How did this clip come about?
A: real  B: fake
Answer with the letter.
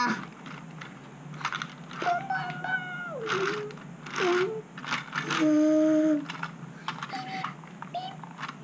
A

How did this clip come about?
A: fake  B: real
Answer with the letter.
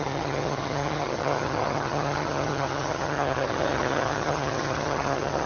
A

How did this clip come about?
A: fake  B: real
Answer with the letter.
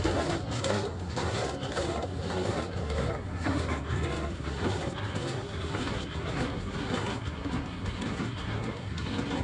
A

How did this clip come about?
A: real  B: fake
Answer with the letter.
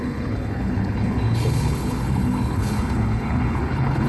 B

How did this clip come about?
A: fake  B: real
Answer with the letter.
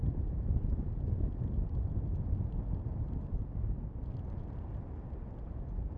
B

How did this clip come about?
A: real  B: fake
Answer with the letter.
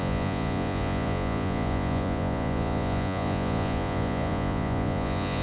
B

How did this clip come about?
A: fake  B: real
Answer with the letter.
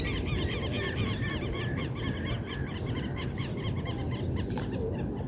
B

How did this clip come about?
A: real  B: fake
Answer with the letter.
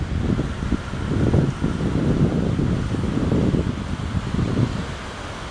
A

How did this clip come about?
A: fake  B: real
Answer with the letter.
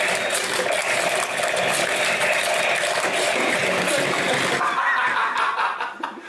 B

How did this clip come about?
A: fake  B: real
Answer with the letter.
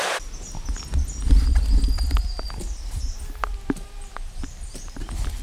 B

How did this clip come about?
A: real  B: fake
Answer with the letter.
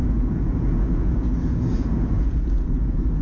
B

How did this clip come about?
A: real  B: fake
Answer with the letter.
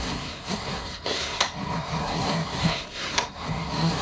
B